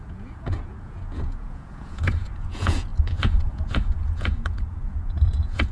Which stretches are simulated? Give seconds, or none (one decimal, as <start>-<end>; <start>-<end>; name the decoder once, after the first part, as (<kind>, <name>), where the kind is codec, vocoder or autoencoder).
0.0-5.7 (vocoder, Vocos)